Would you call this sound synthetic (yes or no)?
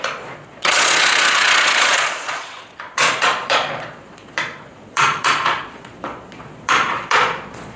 yes